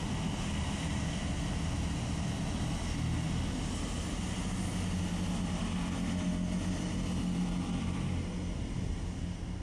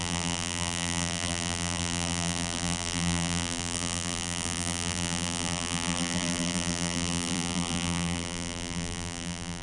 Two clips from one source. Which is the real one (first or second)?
first